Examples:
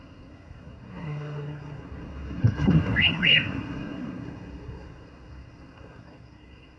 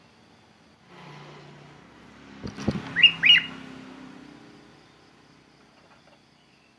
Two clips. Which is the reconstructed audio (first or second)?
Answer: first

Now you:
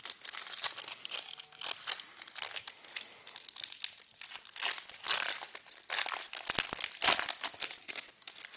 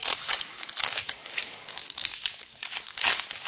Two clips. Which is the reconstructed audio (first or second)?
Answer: second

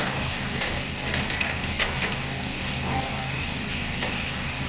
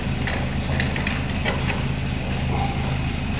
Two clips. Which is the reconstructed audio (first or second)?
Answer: first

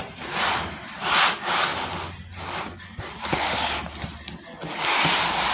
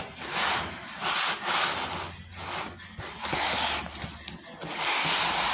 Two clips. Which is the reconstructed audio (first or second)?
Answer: first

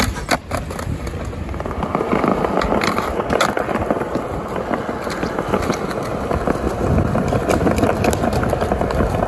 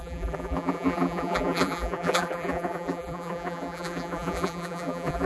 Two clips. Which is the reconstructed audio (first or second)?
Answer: second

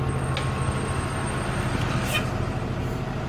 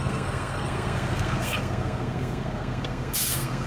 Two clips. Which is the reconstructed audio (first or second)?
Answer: second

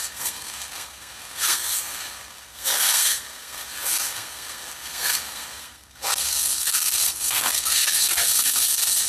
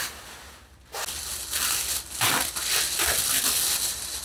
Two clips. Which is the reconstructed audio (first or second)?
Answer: first